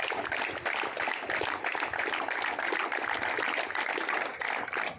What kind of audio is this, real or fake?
real